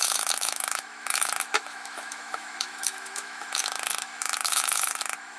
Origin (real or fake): fake